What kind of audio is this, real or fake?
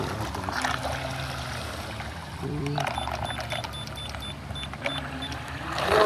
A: real